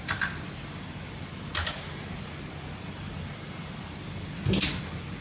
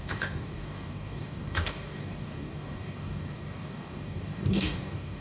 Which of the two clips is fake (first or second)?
second